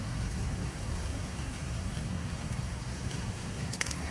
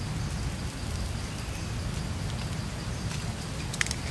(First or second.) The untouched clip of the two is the second